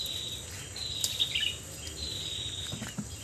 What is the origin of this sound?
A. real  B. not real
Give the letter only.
A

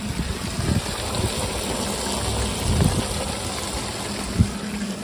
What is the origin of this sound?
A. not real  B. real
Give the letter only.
B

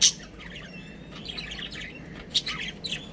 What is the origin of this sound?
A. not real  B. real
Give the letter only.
B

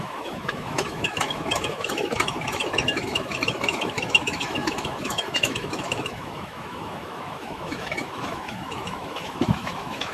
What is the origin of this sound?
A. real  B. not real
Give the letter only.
B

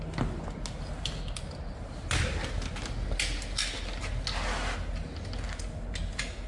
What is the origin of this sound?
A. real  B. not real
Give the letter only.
A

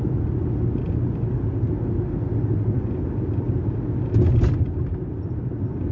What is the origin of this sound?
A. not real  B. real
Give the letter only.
B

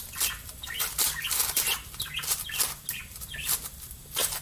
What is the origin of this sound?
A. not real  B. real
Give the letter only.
B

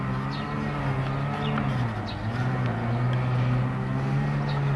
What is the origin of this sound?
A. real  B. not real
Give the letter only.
A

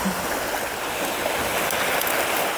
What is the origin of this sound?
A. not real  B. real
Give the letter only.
B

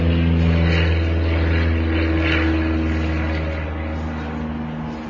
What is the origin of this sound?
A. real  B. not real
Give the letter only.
A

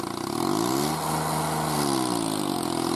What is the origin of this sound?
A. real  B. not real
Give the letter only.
A